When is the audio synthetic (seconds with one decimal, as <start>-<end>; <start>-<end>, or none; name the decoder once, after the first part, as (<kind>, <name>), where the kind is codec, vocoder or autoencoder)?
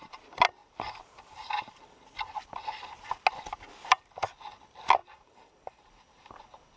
0.6-2.0 (vocoder, BigVGAN v2); 5.0-5.9